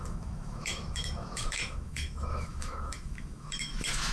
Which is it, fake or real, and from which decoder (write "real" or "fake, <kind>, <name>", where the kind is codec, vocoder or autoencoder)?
fake, autoencoder, DAC-VAE